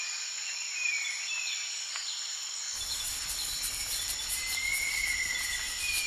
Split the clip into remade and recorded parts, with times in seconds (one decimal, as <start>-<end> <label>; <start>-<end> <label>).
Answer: 0.0-6.1 recorded

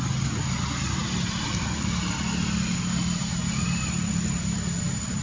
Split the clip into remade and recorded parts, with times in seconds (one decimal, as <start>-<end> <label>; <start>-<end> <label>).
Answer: 0.0-5.2 remade

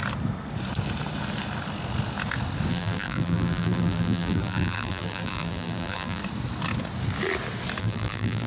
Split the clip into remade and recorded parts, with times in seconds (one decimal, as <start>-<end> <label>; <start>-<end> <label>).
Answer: 0.0-2.7 recorded; 2.7-6.2 remade; 6.2-7.8 recorded; 7.8-8.5 remade

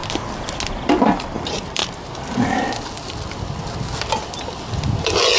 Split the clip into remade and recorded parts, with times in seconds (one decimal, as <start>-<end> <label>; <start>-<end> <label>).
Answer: 0.0-0.8 recorded; 0.8-1.8 remade; 1.8-3.6 recorded; 3.6-5.4 remade

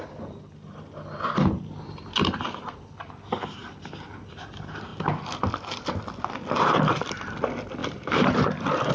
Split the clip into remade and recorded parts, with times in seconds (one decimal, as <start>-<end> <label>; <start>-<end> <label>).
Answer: 0.0-7.8 recorded; 7.8-8.5 remade; 8.5-8.9 recorded

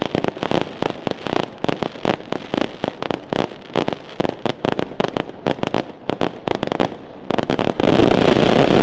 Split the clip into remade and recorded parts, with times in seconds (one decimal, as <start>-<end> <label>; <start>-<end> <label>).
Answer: 0.0-8.8 recorded